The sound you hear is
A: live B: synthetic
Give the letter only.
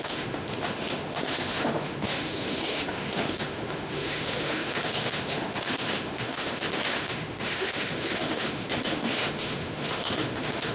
B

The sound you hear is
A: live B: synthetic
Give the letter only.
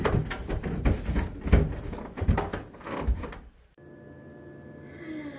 A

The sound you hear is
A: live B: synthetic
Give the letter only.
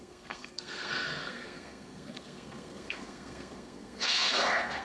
B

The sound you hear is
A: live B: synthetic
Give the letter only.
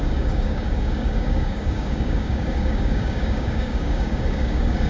B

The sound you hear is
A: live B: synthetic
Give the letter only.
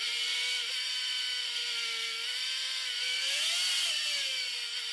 A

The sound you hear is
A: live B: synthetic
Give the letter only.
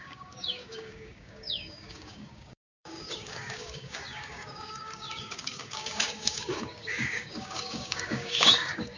B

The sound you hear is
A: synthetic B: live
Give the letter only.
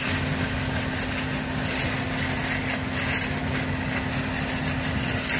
B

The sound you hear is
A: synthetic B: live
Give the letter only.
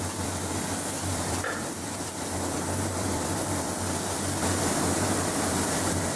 A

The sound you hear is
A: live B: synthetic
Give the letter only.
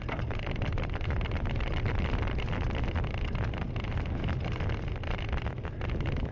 A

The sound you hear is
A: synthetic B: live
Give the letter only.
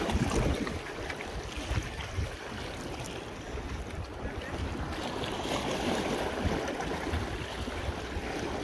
B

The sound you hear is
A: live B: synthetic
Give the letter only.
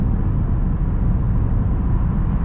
A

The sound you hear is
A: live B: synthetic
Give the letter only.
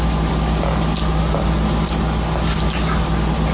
A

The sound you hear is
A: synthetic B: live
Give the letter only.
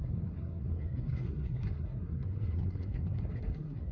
A